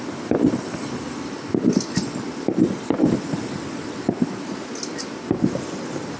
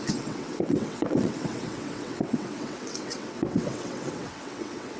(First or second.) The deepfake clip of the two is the second